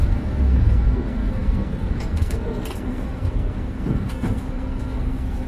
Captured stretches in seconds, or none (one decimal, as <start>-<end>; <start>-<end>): none